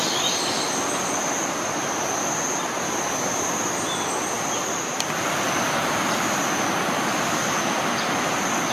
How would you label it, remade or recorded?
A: recorded